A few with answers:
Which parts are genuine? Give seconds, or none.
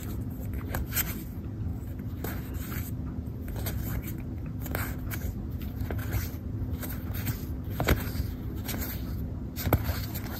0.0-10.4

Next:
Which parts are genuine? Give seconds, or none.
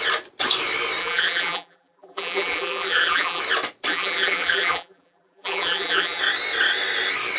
0.0-1.0; 3.4-3.9; 6.2-7.4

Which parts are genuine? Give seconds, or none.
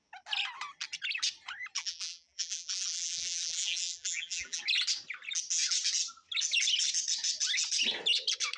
0.0-1.8; 4.6-8.6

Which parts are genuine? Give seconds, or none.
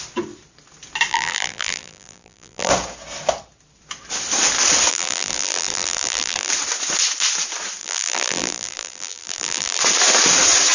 0.0-1.1; 2.7-4.9; 6.5-7.8; 9.8-10.7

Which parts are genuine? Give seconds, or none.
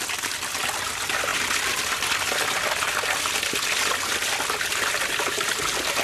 0.0-6.0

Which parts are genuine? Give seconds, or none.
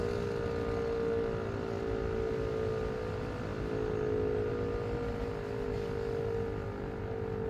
0.0-7.5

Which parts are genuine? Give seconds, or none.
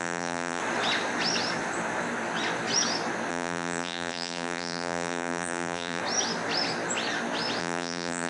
0.6-3.3; 6.0-7.6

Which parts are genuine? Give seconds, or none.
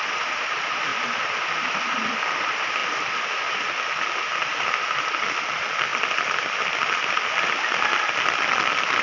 5.9-8.5